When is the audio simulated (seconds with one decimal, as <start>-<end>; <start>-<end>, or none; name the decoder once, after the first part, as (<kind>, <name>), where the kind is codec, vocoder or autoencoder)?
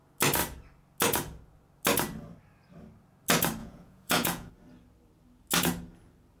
3.6-4.5 (vocoder, Vocos)